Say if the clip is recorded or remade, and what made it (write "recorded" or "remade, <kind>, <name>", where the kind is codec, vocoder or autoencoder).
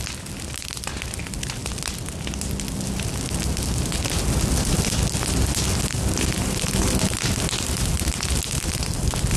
recorded